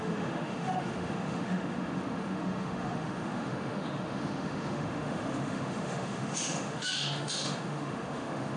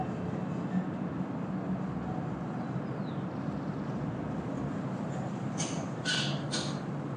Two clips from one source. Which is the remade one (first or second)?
first